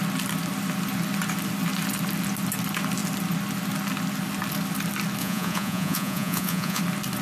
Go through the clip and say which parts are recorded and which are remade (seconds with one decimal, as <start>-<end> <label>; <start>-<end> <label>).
0.0-5.2 recorded; 5.2-6.8 remade; 6.8-7.2 recorded